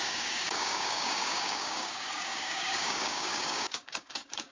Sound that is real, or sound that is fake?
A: fake